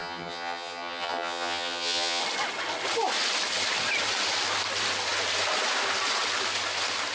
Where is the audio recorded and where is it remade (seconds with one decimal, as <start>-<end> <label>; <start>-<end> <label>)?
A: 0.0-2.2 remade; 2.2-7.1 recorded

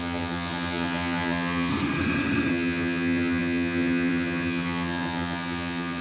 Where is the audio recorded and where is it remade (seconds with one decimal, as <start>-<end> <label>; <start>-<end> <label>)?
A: 0.0-1.7 remade; 1.7-2.5 recorded; 2.5-6.0 remade

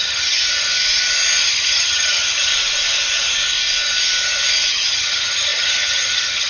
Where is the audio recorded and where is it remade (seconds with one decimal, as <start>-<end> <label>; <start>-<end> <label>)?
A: 0.0-0.4 remade; 0.4-1.5 recorded; 1.5-2.5 remade; 2.5-4.7 recorded; 4.7-6.5 remade